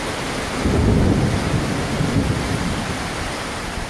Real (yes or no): yes